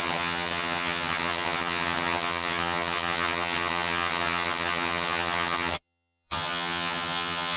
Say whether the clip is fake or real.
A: fake